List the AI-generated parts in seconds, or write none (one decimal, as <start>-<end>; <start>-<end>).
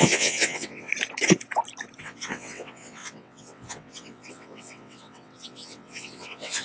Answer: 0.0-0.9; 2.0-6.6